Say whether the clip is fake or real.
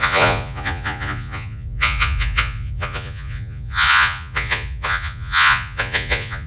fake